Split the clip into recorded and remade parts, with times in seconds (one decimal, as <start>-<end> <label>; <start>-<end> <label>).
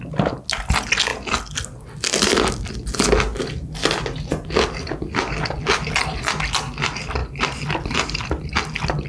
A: 0.0-9.1 recorded